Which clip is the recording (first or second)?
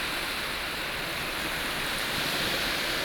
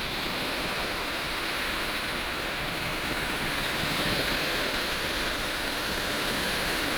first